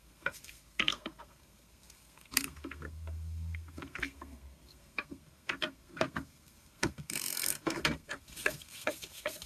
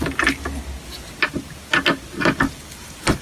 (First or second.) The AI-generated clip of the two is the first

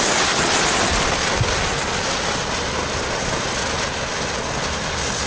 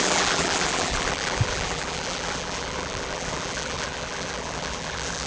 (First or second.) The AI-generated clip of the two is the second